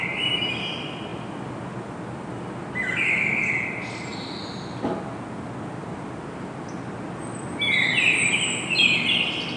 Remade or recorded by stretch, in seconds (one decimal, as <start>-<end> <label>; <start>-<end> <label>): 0.0-9.6 recorded